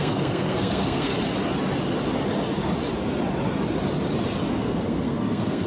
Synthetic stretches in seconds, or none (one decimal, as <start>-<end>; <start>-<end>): 0.0-1.1; 4.5-5.7